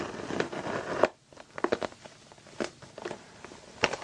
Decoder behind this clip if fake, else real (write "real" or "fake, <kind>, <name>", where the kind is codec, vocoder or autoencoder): real